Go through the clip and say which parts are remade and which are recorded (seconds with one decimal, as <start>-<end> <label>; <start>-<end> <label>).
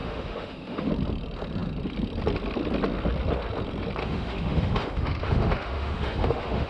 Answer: 0.0-0.9 remade; 0.9-4.0 recorded; 4.0-6.7 remade